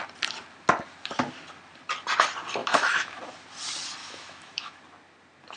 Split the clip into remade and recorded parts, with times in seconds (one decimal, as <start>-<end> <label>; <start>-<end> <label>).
0.0-2.6 recorded; 2.6-3.2 remade; 3.2-4.0 recorded; 4.0-4.8 remade; 4.8-5.6 recorded